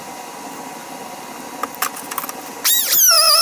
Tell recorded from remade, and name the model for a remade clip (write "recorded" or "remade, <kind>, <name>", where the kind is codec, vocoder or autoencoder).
recorded